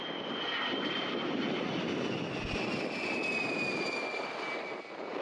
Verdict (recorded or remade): recorded